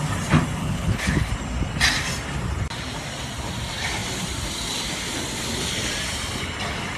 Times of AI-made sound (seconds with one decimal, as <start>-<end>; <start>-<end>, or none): 0.6-1.3